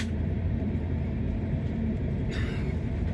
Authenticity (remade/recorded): remade